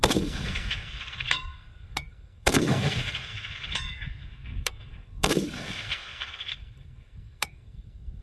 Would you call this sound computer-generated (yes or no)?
yes